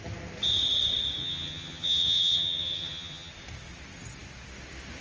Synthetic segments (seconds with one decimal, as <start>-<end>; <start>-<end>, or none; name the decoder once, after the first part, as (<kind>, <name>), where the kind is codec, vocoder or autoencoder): 1.2-3.3 (vocoder, HiFi-GAN)